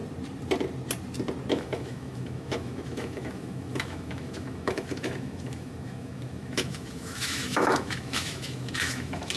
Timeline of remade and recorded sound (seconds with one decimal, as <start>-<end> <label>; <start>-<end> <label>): 0.0-1.5 recorded; 1.5-9.4 remade